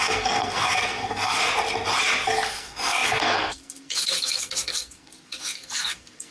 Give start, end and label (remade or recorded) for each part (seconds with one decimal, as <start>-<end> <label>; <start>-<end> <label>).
0.0-1.4 remade; 1.4-2.5 recorded; 2.5-6.3 remade